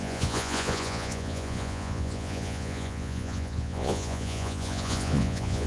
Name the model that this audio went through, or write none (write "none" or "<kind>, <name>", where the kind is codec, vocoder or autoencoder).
vocoder, Vocos